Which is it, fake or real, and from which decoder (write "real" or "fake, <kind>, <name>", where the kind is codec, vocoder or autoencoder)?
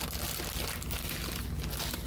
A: real